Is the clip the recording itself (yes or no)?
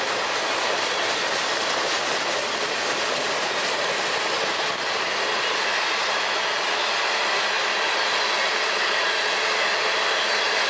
yes